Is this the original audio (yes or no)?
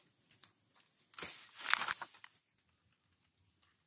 yes